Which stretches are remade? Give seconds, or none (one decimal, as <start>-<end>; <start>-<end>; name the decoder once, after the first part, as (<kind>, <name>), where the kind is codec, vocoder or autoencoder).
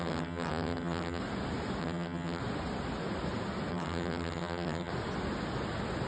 0.0-1.2 (vocoder, HiFi-GAN); 1.8-2.4; 3.7-4.9